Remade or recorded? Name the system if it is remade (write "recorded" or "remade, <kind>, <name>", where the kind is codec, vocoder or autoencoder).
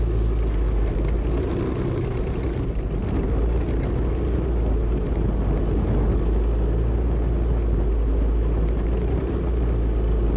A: recorded